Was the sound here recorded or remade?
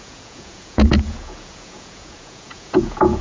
remade